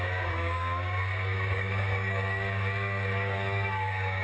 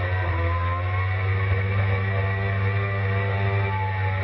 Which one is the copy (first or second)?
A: first